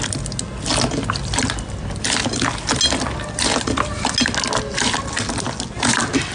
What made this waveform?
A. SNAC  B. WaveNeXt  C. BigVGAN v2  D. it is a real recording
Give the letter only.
D